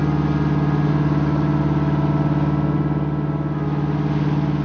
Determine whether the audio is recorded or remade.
recorded